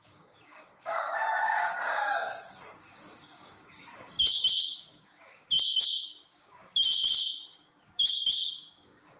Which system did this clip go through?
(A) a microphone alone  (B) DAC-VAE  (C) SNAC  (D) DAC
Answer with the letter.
D